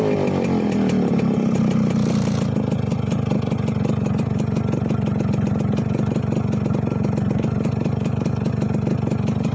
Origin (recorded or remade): recorded